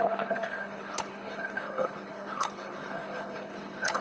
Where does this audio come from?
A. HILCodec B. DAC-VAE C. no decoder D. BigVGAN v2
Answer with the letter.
A